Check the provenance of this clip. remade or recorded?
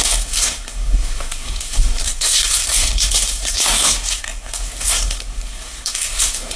remade